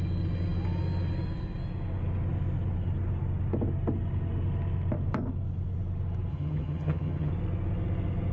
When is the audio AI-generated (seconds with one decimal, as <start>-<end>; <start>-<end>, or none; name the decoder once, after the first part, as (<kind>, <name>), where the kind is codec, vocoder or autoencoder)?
6.3-7.3 (vocoder, HiFi-GAN)